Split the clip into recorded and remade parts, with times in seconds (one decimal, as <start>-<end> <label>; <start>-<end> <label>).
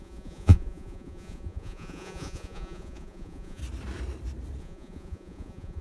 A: 0.0-3.6 remade; 3.6-4.6 recorded; 4.6-5.8 remade